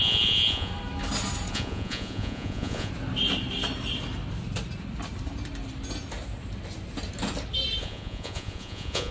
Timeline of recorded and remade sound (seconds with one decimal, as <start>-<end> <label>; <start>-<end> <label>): 0.0-0.7 remade; 0.7-1.5 recorded; 1.5-2.9 remade; 2.9-7.8 recorded; 7.8-9.1 remade